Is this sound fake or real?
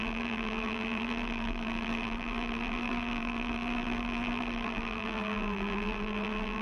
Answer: fake